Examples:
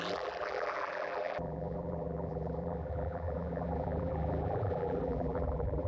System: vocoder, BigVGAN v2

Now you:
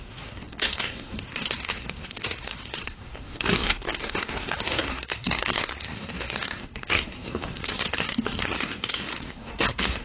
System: codec, SNAC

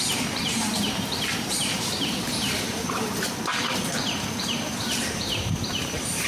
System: vocoder, BigVGAN v2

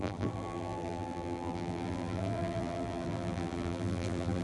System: vocoder, BigVGAN v2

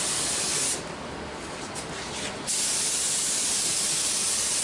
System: none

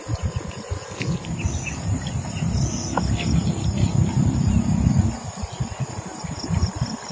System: none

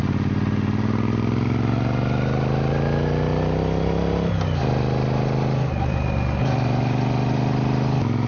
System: none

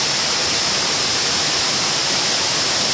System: none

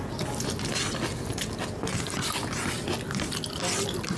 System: none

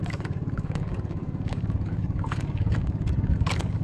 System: codec, DAC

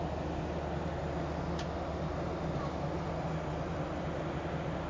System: none